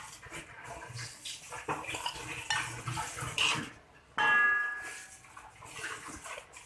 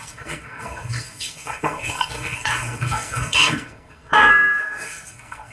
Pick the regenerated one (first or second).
second